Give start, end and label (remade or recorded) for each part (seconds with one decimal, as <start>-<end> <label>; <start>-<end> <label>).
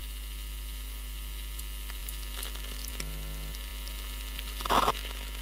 0.0-5.4 recorded